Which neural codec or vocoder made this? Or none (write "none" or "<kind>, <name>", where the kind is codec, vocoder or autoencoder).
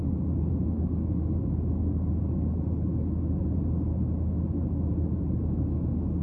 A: none